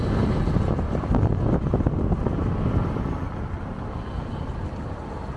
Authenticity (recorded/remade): recorded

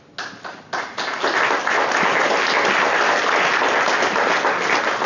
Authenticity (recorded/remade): recorded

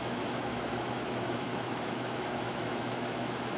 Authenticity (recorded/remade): remade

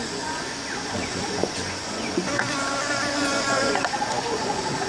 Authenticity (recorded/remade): remade